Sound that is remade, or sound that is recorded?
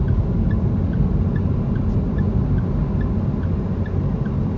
recorded